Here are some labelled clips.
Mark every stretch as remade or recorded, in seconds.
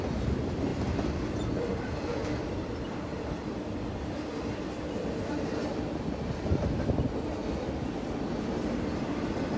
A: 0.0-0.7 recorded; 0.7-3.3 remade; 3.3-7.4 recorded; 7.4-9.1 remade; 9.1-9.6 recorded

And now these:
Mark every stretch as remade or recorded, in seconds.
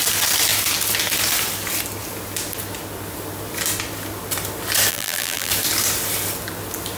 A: 0.0-4.9 recorded; 4.9-5.5 remade; 5.5-7.0 recorded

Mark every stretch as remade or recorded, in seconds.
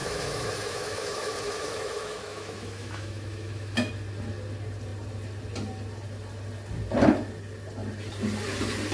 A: 0.0-3.9 remade; 3.9-8.9 recorded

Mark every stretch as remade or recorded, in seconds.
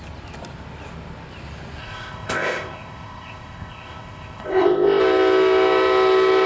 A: 0.0-1.8 recorded; 1.8-5.0 remade; 5.0-6.5 recorded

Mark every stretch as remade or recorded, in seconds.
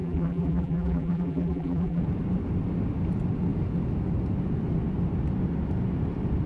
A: 0.0-2.0 remade; 2.0-6.5 recorded